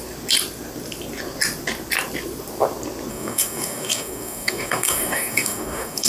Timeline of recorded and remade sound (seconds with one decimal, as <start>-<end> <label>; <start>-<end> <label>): 0.0-3.1 recorded; 3.1-6.1 remade

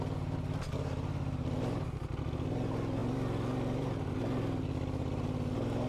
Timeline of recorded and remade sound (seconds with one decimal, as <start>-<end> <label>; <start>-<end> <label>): 0.0-5.9 recorded

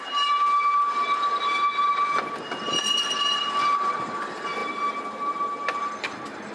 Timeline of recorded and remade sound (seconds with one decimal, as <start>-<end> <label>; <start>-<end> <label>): 0.0-6.5 recorded

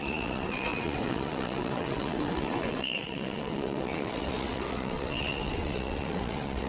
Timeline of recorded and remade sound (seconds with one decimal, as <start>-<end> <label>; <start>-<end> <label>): 0.0-6.7 remade

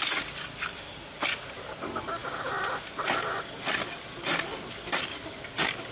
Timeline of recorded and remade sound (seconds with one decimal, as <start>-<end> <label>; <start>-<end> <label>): 0.0-5.9 recorded

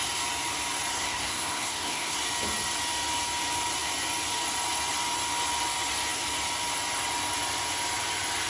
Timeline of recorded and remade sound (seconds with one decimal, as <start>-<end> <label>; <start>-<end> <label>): 0.0-0.9 recorded; 0.9-2.2 remade; 2.2-8.5 recorded

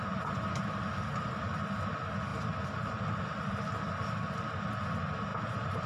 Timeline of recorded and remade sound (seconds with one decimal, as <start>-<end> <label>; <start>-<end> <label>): 0.0-5.9 recorded